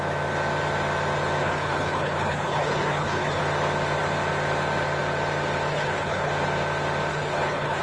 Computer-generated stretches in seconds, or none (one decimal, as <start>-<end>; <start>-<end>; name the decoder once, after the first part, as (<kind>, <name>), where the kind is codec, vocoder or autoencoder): 1.4-3.4 (codec, HILCodec); 5.7-6.3; 7.1-7.8